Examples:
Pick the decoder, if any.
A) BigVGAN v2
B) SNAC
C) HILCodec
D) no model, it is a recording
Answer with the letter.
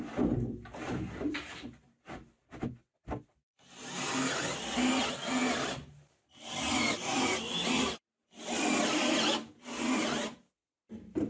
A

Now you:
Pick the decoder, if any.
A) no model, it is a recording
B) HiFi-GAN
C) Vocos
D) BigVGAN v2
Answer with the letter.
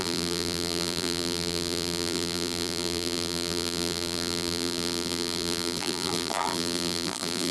D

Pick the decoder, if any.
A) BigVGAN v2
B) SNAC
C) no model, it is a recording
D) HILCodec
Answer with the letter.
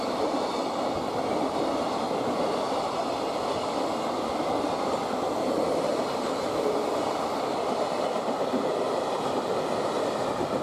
C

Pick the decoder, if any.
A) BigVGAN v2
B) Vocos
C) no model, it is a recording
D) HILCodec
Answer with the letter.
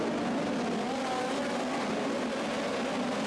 C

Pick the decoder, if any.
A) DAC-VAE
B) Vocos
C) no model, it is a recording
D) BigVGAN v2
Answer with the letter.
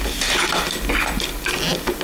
C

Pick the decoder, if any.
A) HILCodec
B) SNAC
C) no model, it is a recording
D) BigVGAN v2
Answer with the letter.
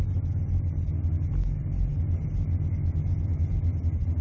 C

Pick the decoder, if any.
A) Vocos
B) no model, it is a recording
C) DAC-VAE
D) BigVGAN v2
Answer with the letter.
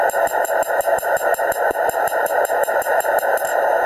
D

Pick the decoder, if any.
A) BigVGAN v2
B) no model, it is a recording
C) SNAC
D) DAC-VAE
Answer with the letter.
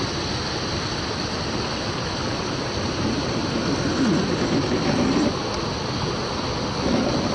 B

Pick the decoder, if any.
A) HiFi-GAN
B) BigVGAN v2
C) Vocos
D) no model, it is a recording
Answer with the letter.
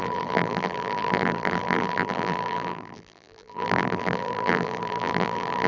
B